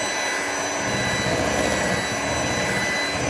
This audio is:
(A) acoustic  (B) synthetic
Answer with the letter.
A